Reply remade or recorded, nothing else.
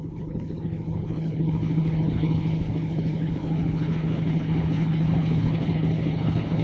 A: remade